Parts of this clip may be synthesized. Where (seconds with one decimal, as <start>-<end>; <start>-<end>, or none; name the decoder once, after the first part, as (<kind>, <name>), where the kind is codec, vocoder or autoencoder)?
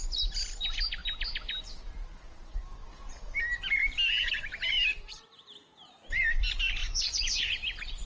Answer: 6.8-7.5 (vocoder, Vocos)